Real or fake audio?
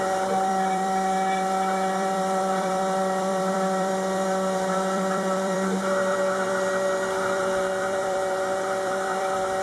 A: fake